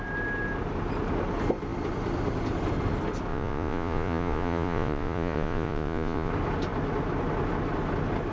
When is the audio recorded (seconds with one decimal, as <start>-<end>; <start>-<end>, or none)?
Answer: 0.0-3.3; 6.3-8.3